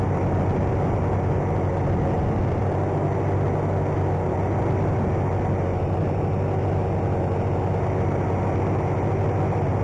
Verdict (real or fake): real